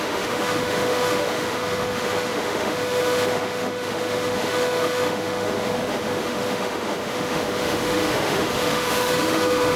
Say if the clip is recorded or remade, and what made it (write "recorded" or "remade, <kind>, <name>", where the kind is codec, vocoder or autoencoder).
remade, autoencoder, DAC-VAE